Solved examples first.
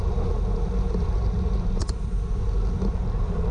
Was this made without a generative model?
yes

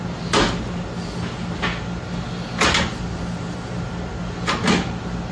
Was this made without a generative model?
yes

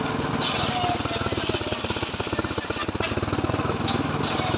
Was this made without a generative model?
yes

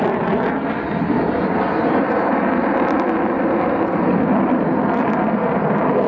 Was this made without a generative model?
yes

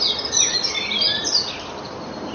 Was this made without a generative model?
yes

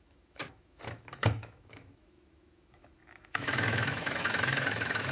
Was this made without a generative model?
no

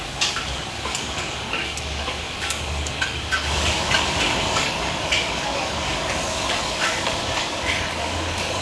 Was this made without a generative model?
no